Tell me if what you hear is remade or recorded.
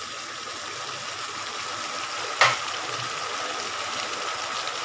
recorded